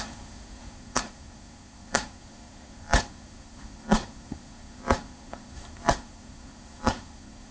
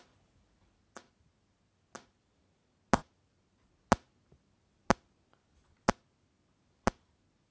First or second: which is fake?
first